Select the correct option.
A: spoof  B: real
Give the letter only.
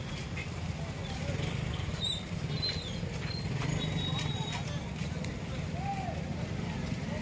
B